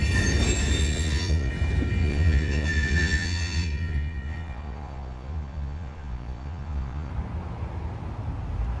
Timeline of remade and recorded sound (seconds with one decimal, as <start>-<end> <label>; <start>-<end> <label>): 0.0-0.8 recorded; 0.8-1.5 remade; 1.5-2.0 recorded; 2.0-7.1 remade; 7.1-8.8 recorded